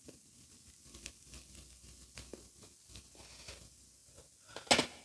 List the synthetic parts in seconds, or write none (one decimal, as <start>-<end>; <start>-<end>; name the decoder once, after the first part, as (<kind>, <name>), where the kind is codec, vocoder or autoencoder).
none